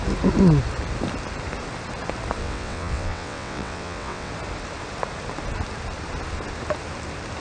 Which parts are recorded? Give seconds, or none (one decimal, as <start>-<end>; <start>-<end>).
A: 0.0-2.4; 4.3-7.4

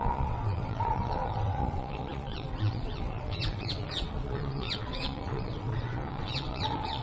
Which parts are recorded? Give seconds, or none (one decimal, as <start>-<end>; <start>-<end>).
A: none

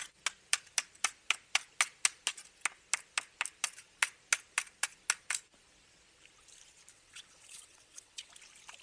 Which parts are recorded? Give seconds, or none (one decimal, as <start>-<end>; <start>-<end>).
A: 0.0-6.9; 8.3-8.8